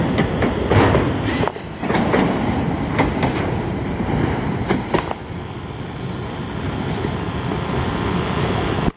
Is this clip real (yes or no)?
no